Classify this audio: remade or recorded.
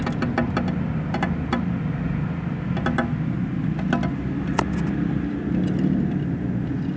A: recorded